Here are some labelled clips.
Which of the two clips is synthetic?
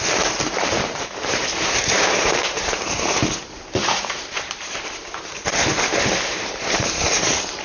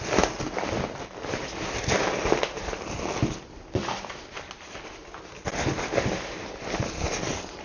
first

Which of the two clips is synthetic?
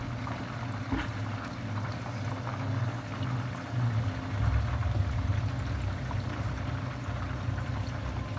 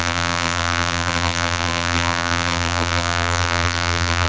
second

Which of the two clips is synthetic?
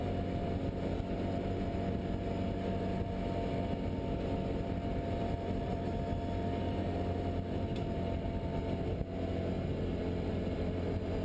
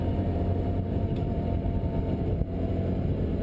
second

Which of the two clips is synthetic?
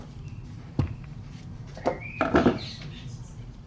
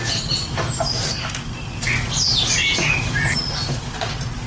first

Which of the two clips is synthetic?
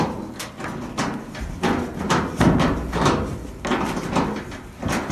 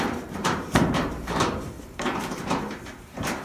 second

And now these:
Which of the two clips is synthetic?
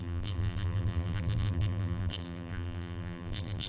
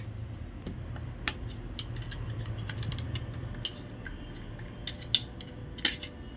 first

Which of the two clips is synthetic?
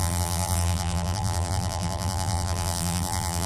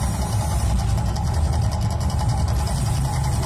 first